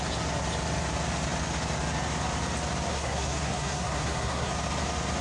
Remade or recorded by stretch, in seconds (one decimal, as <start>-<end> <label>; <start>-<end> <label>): 0.0-2.9 recorded; 2.9-4.5 remade; 4.5-5.2 recorded